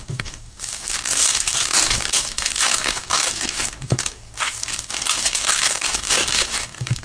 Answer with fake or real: fake